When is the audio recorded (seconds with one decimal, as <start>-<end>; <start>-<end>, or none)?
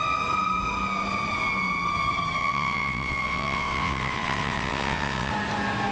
0.0-2.4; 5.3-5.9